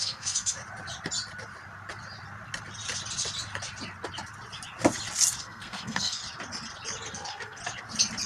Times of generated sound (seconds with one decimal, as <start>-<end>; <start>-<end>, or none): 0.0-0.6; 5.4-6.2; 7.1-7.6